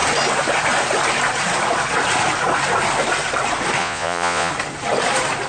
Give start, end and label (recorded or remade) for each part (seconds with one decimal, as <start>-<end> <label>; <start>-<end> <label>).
0.0-3.8 recorded; 3.8-4.5 remade; 4.5-5.5 recorded